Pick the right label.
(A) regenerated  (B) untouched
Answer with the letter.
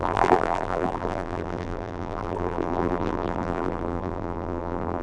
A